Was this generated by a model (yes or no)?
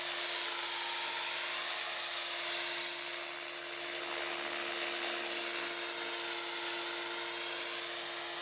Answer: no